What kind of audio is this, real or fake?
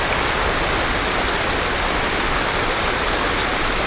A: real